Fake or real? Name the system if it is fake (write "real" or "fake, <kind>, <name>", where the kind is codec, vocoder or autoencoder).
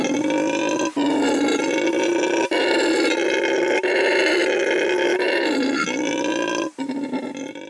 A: real